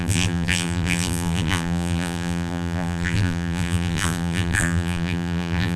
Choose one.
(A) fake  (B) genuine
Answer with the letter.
A